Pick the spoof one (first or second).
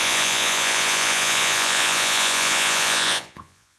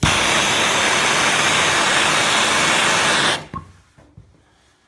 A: first